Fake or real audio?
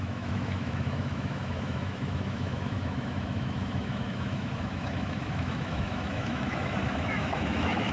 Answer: fake